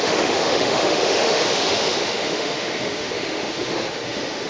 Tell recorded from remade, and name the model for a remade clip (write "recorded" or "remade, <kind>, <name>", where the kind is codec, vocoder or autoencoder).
remade, autoencoder, DAC-VAE